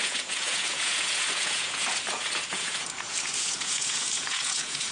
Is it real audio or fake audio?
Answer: fake